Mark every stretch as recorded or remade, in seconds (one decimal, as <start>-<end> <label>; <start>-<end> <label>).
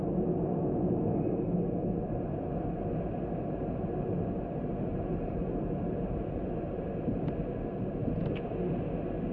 0.0-4.9 recorded; 4.9-8.1 remade; 8.1-9.3 recorded